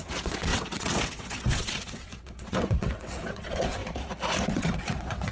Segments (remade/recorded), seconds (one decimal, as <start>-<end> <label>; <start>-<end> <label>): 0.0-3.8 remade; 3.8-4.5 recorded; 4.5-5.3 remade

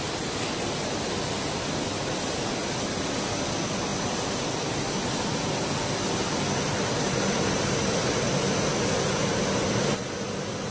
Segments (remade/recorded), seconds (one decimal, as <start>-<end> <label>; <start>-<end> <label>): 0.0-10.7 recorded

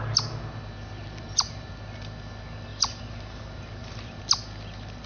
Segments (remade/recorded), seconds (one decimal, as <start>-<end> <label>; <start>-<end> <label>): 0.0-1.0 recorded; 1.0-1.7 remade; 1.7-2.7 recorded; 2.7-4.2 remade; 4.2-5.1 recorded

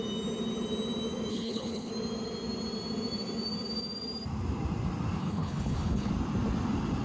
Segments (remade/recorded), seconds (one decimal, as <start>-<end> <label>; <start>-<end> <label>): 0.0-1.3 recorded; 1.3-1.9 remade; 1.9-5.2 recorded; 5.2-6.1 remade; 6.1-7.0 recorded

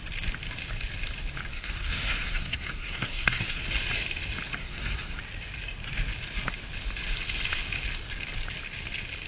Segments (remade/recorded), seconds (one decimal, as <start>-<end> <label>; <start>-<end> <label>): 0.0-1.5 recorded; 1.5-3.6 remade; 3.6-4.6 recorded; 4.6-5.2 remade; 5.2-9.3 recorded